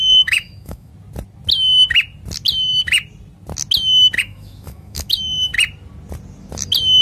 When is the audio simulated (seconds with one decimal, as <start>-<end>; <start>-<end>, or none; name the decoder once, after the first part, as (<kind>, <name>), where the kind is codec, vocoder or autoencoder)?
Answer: 0.0-0.9 (autoencoder, DAC-VAE); 4.2-5.5